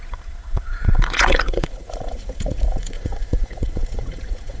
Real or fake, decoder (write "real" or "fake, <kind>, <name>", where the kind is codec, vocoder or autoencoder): fake, vocoder, Vocos